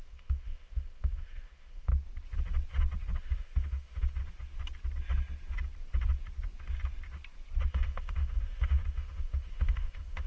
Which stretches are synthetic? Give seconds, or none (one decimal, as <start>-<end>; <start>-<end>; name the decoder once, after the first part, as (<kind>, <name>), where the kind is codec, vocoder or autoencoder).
0.0-1.9 (autoencoder, DAC-VAE); 3.2-4.2; 7.7-10.3